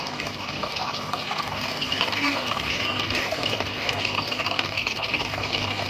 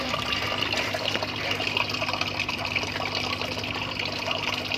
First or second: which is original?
second